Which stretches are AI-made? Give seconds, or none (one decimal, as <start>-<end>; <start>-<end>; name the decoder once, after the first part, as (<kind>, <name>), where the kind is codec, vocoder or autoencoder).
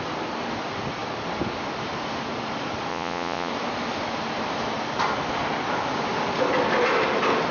2.9-3.5 (vocoder, Vocos)